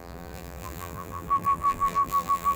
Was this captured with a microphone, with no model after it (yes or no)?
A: no